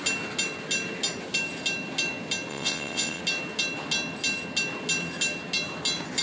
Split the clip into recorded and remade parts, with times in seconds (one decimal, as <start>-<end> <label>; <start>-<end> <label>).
0.0-2.5 recorded; 2.5-3.2 remade; 3.2-6.2 recorded